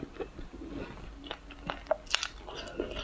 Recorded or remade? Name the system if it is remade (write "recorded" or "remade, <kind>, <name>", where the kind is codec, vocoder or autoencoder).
recorded